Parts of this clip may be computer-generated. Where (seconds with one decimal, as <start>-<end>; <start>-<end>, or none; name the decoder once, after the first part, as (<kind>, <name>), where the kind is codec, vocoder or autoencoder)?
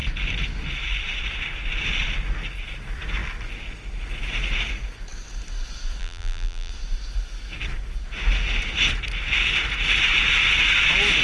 6.0-6.7 (vocoder, BigVGAN v2)